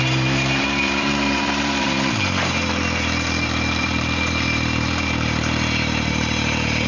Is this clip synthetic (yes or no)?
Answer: yes